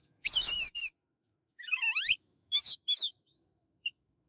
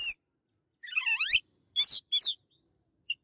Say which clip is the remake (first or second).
first